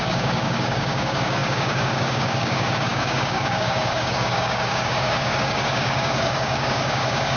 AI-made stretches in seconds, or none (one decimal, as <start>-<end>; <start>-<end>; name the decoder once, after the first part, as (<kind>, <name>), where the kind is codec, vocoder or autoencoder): 0.0-7.4 (codec, DAC)